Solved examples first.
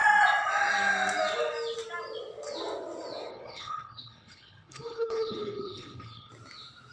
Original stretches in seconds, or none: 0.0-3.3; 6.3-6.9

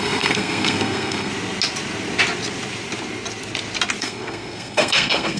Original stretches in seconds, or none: 1.3-4.0